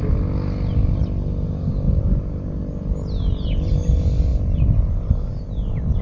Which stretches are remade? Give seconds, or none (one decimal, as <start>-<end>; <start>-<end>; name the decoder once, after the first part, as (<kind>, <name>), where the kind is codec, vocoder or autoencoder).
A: none